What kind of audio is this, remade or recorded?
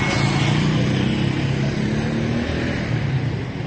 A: recorded